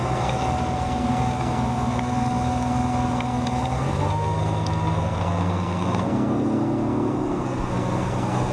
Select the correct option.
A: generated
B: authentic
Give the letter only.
A